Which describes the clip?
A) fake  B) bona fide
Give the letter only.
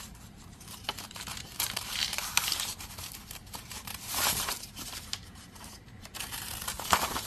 A